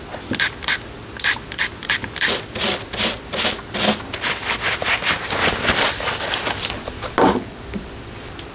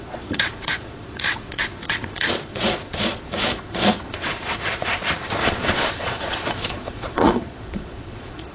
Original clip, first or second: first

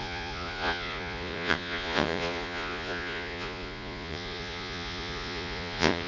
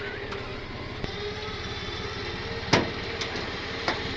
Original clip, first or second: second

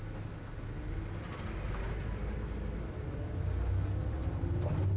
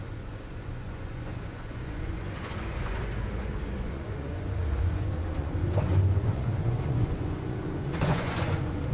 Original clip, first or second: first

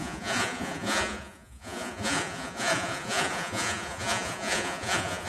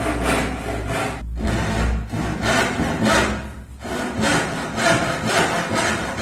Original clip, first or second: second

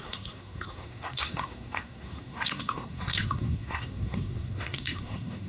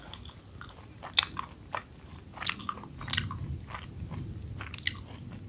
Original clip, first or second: second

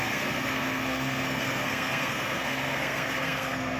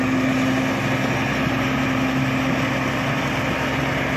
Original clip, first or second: second